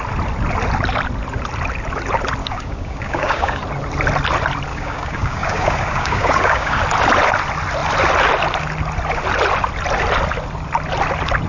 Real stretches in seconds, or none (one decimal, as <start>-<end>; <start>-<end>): 0.0-2.4; 3.6-4.7; 6.8-11.5